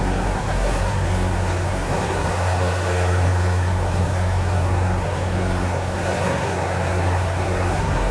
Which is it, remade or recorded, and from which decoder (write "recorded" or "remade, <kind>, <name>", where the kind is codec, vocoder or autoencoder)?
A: remade, codec, SNAC